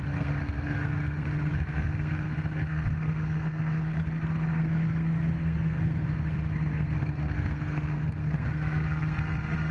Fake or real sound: fake